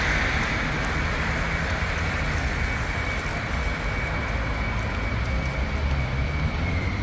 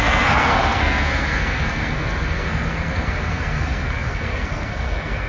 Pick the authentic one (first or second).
first